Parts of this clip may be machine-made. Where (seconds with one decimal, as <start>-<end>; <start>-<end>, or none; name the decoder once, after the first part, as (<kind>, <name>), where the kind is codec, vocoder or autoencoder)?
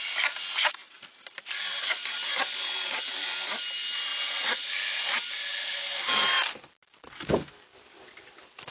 none